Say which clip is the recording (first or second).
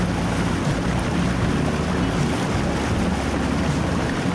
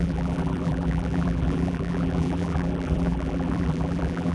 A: first